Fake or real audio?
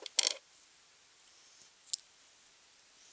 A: real